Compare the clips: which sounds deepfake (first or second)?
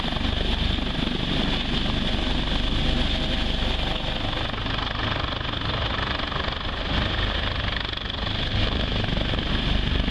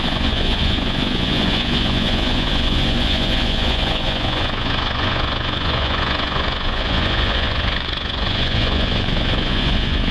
second